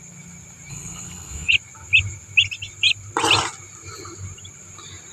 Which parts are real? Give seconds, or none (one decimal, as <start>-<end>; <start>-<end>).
0.0-0.7; 1.5-5.1